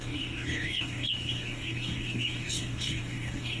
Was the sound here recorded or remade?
remade